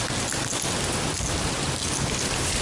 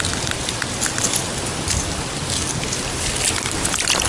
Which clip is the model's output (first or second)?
second